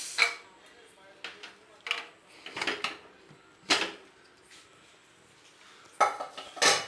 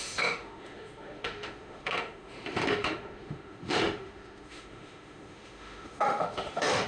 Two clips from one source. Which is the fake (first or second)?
second